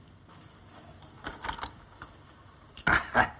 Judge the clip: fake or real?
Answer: real